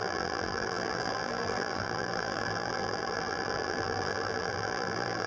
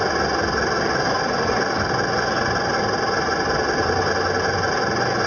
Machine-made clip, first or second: first